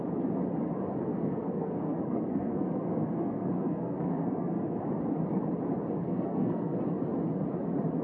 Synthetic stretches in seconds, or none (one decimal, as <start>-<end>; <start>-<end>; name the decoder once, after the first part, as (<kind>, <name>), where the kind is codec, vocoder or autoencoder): 1.1-4.8 (codec, SNAC); 6.0-6.8